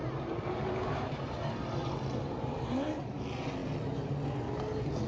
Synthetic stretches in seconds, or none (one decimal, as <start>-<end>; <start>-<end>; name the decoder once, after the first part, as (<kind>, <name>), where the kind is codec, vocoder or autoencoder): 0.0-3.1 (vocoder, BigVGAN v2)